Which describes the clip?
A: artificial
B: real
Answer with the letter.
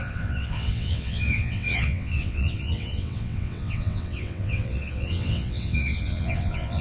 A